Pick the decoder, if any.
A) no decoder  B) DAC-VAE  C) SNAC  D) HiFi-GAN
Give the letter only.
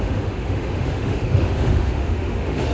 B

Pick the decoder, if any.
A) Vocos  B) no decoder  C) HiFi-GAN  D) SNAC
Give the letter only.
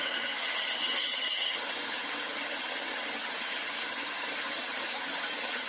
C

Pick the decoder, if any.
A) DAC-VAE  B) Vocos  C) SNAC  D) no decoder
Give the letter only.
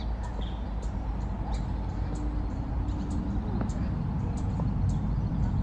D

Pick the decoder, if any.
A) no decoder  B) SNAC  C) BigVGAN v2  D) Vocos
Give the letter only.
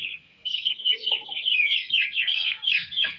B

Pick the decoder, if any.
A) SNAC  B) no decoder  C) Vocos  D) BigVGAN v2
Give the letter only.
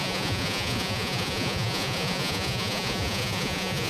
C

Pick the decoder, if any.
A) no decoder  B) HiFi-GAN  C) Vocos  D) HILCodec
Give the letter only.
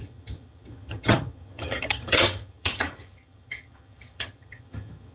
B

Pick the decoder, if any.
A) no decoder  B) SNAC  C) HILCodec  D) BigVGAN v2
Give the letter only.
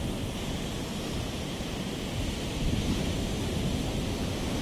A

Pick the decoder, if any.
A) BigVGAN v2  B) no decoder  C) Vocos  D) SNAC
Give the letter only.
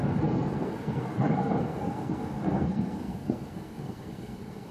D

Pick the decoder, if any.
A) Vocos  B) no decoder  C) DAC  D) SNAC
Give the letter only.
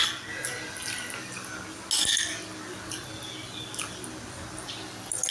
B